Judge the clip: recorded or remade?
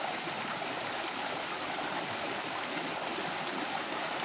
recorded